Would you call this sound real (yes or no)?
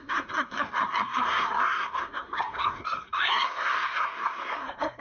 no